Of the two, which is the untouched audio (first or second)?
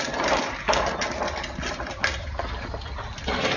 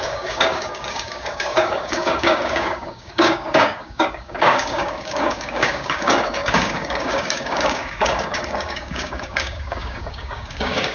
first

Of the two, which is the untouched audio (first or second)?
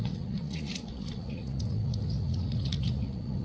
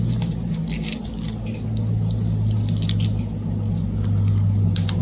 second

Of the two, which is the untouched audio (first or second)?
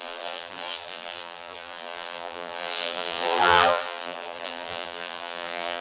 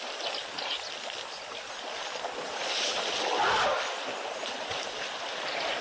second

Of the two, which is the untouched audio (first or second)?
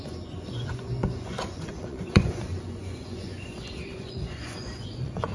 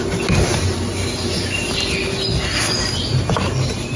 second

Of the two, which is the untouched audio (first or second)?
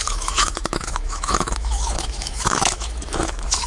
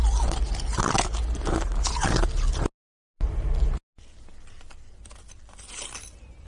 second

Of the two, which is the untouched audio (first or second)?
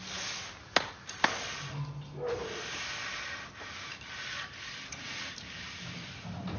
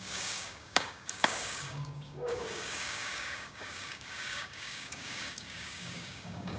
first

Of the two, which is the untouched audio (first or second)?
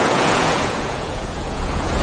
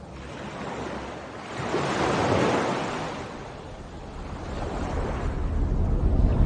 second